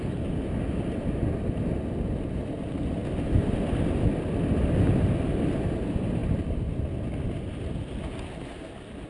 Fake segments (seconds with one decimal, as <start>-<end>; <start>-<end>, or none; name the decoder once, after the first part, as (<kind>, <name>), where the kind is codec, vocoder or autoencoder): none

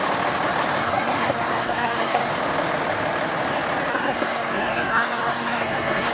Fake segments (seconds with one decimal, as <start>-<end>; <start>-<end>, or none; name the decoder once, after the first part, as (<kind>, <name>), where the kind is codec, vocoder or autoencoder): 0.8-2.3 (codec, SNAC); 3.9-6.1

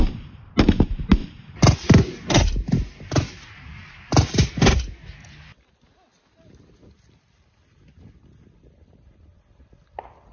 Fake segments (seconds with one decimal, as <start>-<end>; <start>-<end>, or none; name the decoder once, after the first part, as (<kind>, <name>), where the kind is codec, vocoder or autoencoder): 1.2-4.5 (vocoder, BigVGAN v2)

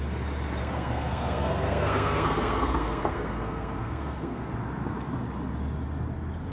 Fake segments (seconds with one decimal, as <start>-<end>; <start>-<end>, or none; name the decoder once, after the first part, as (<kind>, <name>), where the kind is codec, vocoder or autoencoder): 0.6-4.5 (codec, SNAC)